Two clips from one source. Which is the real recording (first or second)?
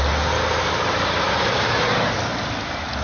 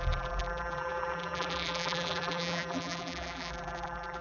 first